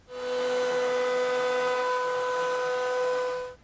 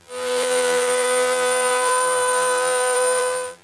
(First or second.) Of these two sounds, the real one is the first